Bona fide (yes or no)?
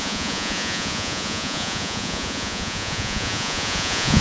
no